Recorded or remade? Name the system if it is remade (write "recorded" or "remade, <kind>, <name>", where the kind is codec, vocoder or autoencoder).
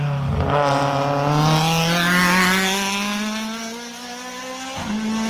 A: recorded